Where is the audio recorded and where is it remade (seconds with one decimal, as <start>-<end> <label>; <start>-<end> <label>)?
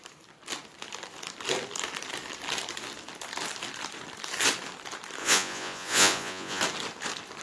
0.0-5.2 recorded; 5.2-6.6 remade; 6.6-7.4 recorded